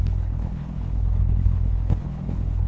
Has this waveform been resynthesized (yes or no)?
yes